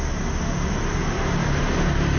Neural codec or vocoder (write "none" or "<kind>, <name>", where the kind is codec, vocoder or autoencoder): none